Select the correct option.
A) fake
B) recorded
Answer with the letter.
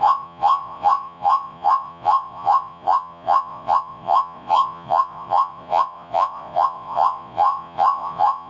A